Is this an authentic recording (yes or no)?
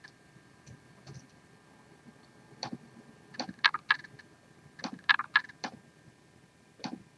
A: yes